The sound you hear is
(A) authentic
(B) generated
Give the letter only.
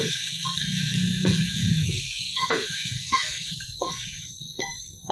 B